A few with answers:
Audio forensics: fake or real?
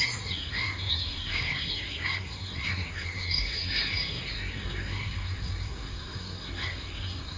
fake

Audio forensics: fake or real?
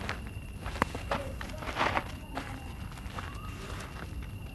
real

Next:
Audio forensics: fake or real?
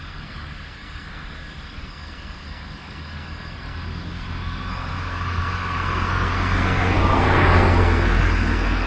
fake